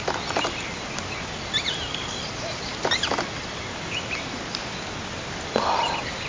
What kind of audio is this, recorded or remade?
recorded